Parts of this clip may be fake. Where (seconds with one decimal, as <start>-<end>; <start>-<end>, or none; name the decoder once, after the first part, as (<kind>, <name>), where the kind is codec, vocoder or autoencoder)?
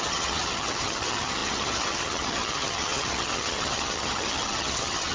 0.0-5.1 (vocoder, HiFi-GAN)